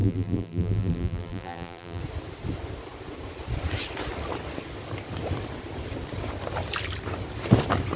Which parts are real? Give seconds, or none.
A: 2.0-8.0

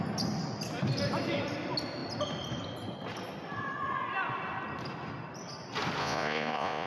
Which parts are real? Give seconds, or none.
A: 0.0-6.0

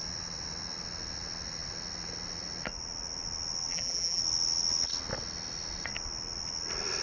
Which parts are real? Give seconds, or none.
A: 0.0-3.7; 4.2-7.0

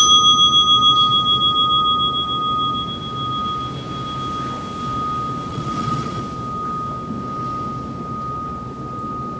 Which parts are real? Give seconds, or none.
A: 0.0-5.5; 6.2-9.4

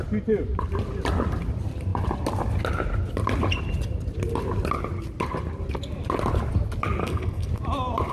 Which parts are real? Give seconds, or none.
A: 0.0-7.0; 7.5-8.1

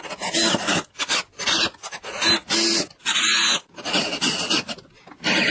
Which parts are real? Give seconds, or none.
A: 0.0-5.5